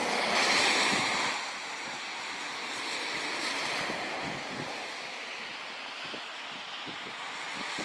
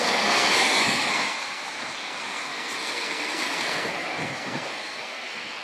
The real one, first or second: first